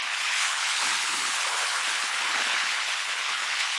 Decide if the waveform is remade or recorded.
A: remade